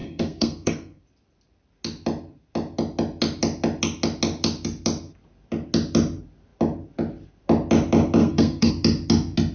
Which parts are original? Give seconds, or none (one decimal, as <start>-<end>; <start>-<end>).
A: 1.0-8.2; 8.7-9.5